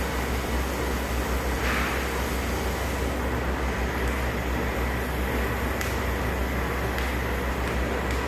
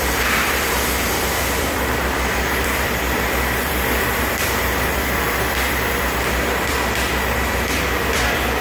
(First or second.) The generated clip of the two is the second